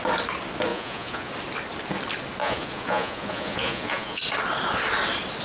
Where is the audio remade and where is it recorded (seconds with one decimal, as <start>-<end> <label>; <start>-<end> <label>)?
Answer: 0.0-0.7 recorded; 0.7-1.3 remade; 1.3-2.4 recorded; 2.4-4.2 remade; 4.2-5.4 recorded